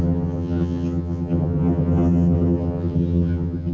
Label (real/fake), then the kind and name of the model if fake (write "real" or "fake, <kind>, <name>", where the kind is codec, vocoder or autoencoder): fake, vocoder, HiFi-GAN